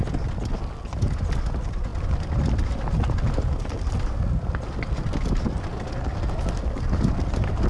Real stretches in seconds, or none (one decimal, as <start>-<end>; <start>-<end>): 0.0-7.7